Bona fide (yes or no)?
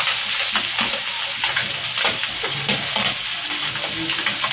yes